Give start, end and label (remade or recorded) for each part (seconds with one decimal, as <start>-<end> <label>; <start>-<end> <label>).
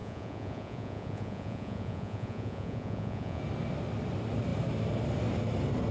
0.0-3.4 remade; 3.4-5.9 recorded